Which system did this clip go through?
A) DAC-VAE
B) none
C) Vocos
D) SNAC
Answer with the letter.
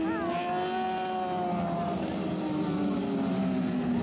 B